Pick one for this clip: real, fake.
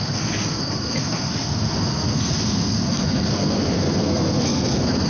fake